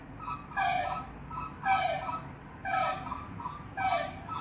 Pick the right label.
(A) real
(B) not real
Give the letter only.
A